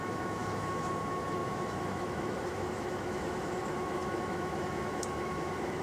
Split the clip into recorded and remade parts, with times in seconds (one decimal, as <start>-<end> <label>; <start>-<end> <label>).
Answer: 0.0-5.8 remade